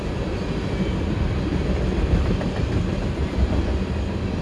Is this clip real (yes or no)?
yes